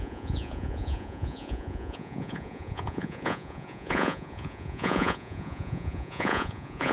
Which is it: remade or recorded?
remade